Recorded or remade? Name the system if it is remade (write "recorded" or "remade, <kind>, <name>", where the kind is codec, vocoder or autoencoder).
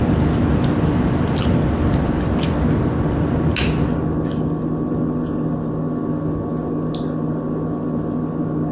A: recorded